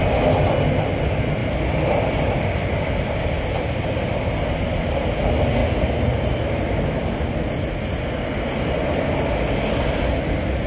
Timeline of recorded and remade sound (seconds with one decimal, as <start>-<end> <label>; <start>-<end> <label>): 0.0-10.7 recorded